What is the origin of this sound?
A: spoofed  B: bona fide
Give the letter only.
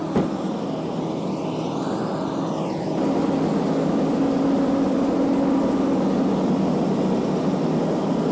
B